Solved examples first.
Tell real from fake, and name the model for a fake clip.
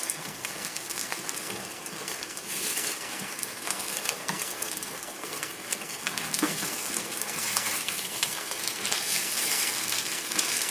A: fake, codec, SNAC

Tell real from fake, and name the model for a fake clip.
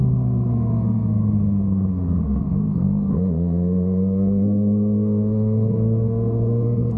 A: fake, codec, SNAC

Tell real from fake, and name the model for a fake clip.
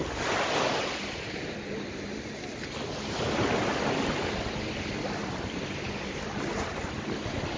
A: real